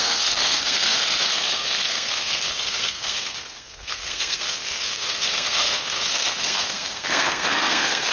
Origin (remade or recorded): remade